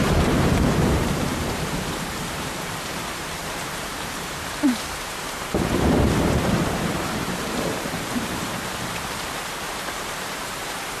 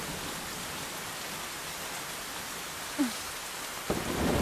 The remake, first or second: first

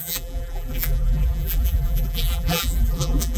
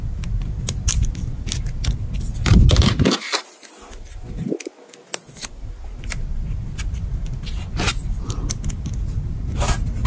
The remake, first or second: first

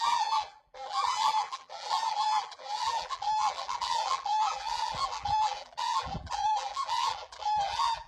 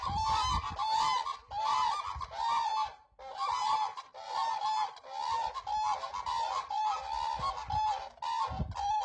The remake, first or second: first